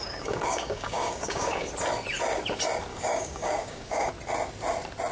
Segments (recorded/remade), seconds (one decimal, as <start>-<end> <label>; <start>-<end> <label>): 0.0-1.7 remade; 1.7-2.9 recorded; 2.9-4.1 remade; 4.1-5.1 recorded